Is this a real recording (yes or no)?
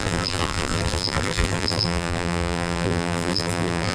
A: no